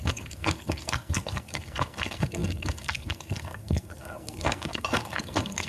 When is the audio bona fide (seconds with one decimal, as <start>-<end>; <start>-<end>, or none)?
none

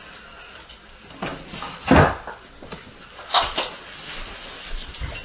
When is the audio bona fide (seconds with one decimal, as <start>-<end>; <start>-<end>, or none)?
0.0-5.2

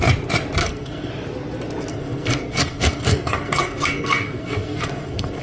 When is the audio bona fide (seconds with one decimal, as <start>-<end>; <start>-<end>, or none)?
0.0-0.6; 1.1-1.9

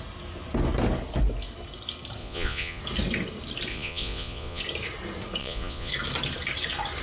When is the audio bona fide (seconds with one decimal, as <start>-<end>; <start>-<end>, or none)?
0.0-2.2; 2.8-3.7; 4.6-5.4; 5.9-7.0

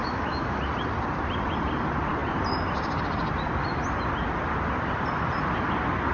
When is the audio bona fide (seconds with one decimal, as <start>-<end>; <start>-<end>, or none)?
0.6-6.1

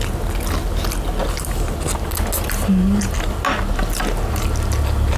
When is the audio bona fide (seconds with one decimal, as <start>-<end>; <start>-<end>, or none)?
0.0-5.2

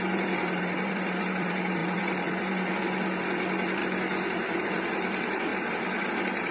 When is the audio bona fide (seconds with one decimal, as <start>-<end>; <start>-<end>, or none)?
3.8-4.6